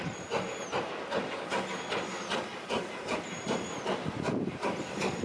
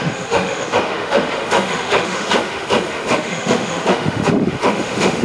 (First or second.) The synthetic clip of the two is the second